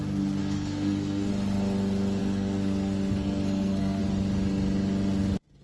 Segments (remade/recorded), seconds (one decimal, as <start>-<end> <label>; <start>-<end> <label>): 0.0-0.4 recorded; 0.4-1.3 remade; 1.3-2.2 recorded; 2.2-4.0 remade; 4.0-5.6 recorded